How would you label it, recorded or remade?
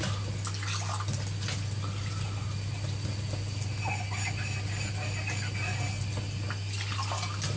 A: recorded